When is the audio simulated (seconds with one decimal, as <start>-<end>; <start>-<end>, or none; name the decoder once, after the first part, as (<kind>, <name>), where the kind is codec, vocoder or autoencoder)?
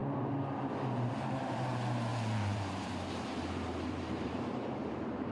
1.4-5.3 (vocoder, BigVGAN v2)